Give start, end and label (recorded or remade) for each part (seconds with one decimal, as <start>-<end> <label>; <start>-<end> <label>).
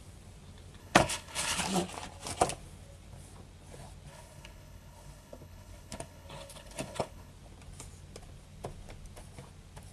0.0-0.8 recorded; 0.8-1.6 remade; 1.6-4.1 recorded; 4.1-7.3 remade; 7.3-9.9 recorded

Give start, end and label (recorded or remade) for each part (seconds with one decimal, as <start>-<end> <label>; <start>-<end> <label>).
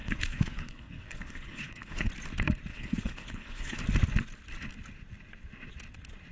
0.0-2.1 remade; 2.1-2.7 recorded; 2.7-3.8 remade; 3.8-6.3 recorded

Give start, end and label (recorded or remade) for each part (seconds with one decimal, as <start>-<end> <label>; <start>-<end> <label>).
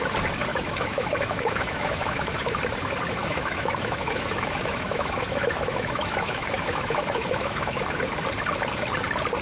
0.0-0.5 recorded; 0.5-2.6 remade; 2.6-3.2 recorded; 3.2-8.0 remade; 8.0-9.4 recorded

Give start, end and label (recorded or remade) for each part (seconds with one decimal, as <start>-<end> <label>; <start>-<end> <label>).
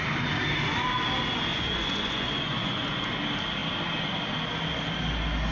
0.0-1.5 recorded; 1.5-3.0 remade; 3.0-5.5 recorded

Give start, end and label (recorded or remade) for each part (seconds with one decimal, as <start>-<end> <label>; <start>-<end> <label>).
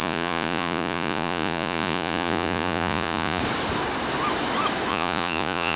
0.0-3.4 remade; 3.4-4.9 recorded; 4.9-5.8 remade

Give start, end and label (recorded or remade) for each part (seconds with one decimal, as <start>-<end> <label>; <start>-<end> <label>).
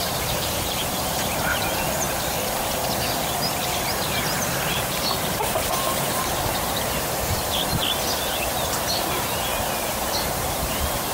0.0-1.5 remade; 1.5-4.7 recorded; 4.7-7.8 remade; 7.8-9.1 recorded; 9.1-9.5 remade; 9.5-10.5 recorded; 10.5-11.1 remade